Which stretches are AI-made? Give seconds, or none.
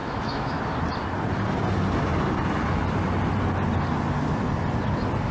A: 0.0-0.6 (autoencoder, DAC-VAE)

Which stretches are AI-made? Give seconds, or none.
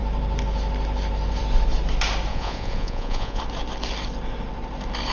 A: 2.3-3.4 (vocoder, Vocos)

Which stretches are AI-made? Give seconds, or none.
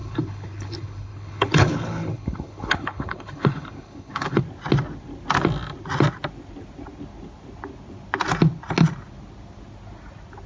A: 0.0-4.4 (codec, HILCodec)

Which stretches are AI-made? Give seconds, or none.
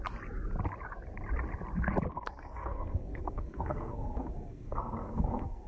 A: 2.1-5.7 (codec, SNAC)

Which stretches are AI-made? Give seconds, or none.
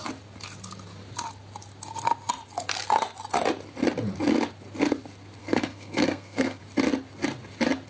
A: 5.4-6.6 (codec, SNAC)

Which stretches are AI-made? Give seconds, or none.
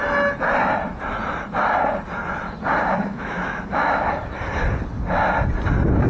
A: 2.9-4.0 (autoencoder, DAC-VAE)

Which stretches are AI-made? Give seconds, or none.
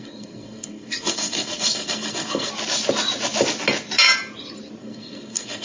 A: 0.0-2.5 (codec, SNAC); 4.8-5.6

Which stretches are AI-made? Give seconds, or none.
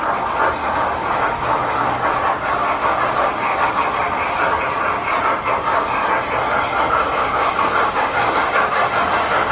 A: 0.6-3.9 (codec, DAC); 7.2-9.5